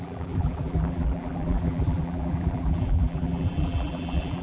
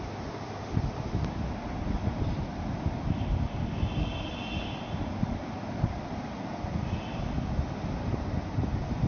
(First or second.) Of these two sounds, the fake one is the first